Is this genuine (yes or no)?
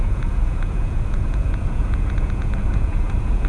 no